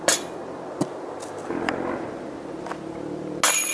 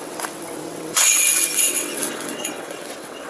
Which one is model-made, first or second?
second